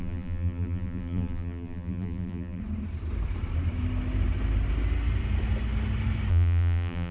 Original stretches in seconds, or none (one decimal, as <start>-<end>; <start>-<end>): 2.6-6.3